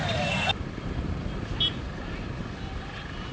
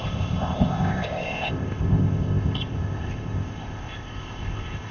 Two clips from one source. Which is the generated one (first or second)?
second